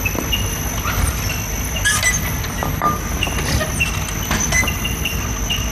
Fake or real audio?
real